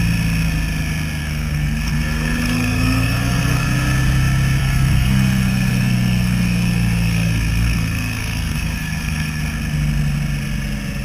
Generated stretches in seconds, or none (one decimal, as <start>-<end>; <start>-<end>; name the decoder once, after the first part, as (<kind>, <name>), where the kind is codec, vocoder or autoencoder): 1.2-3.7 (codec, SNAC); 4.6-9.4